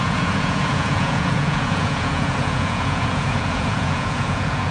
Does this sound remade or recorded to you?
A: remade